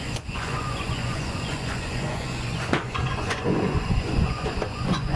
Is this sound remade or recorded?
remade